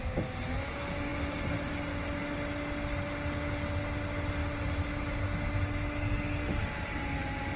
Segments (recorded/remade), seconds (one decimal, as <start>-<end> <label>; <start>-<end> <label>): 0.0-7.6 recorded